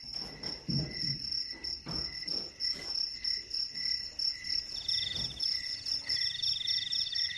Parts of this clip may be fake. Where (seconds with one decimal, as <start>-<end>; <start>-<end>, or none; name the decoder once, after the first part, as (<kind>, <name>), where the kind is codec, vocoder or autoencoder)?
none